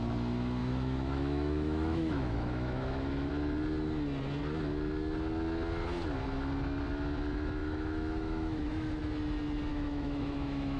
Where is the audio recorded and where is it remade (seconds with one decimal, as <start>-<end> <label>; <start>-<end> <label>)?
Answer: 0.0-0.6 recorded; 0.6-3.3 remade; 3.3-7.6 recorded; 7.6-9.0 remade; 9.0-9.7 recorded; 9.7-10.8 remade